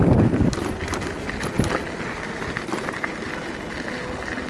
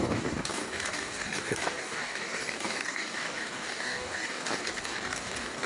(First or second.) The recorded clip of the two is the first